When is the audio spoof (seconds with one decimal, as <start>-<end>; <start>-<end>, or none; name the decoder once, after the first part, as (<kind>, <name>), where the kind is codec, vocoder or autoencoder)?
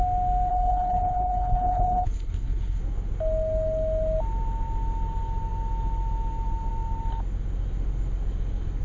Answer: 0.5-2.8 (codec, HILCodec)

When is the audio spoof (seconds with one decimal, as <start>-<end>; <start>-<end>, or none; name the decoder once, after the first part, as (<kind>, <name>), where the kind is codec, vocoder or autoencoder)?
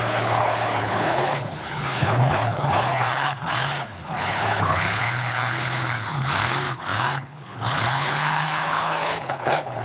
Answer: 0.0-9.8 (codec, HILCodec)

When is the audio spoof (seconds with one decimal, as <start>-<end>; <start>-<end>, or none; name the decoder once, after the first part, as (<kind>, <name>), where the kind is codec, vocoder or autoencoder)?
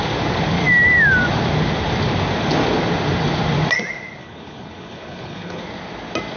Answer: 4.2-5.6 (codec, HILCodec)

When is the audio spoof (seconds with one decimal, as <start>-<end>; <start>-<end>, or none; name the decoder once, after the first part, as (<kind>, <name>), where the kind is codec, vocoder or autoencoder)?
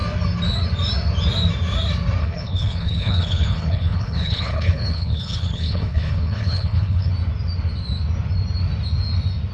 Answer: 2.2-7.1 (codec, HILCodec)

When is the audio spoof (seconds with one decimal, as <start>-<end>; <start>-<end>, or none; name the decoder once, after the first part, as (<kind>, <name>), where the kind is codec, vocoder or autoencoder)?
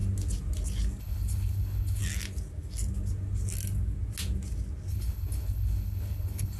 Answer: 1.0-2.0 (codec, HILCodec); 4.9-6.6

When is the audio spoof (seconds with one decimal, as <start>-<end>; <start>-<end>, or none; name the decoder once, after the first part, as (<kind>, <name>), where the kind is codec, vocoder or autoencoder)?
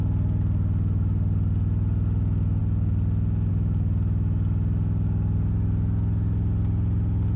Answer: none